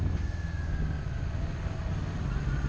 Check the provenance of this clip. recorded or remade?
recorded